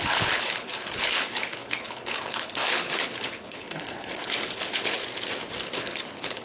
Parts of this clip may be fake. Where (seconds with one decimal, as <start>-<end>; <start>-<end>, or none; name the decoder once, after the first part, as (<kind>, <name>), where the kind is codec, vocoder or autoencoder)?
0.0-5.0 (codec, HILCodec); 5.8-6.4